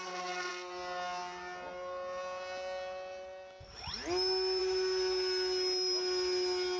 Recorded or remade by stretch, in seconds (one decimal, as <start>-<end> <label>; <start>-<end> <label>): 0.0-6.8 recorded